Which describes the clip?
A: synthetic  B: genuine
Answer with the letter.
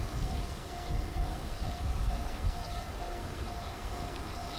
A